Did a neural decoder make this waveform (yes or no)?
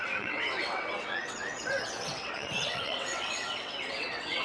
yes